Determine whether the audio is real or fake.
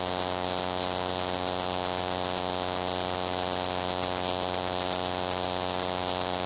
real